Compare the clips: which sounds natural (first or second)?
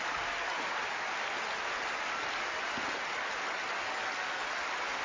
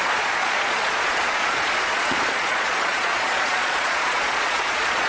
first